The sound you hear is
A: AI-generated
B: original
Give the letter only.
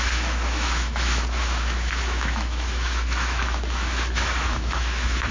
A